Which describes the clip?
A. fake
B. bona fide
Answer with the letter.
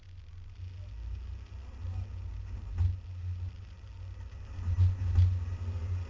B